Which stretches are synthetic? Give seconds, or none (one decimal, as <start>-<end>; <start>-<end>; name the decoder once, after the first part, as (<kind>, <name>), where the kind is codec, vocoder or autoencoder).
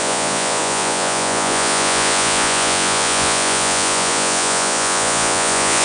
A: 0.0-5.8 (vocoder, Vocos)